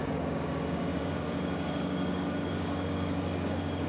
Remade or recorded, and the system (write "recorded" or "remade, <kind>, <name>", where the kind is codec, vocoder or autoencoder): remade, codec, DAC